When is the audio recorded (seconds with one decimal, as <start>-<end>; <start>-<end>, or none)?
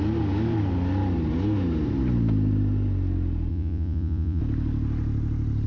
0.0-3.5; 4.4-5.7